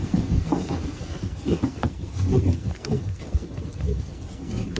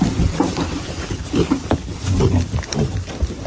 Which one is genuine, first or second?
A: second